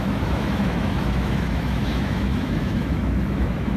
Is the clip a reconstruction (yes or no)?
yes